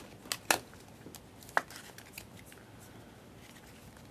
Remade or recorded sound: recorded